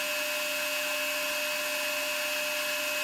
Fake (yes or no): no